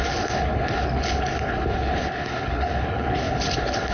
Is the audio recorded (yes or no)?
no